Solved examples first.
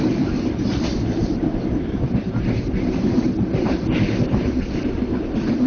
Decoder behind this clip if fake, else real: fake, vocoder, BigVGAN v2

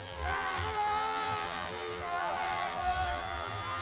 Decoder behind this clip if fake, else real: fake, vocoder, BigVGAN v2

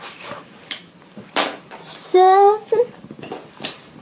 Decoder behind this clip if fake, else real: fake, vocoder, BigVGAN v2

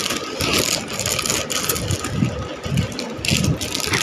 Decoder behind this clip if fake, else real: real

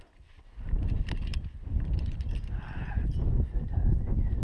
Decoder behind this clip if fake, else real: fake, vocoder, BigVGAN v2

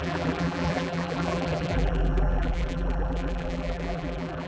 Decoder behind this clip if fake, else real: fake, vocoder, BigVGAN v2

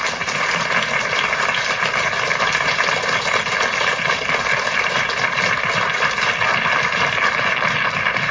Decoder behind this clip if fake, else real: real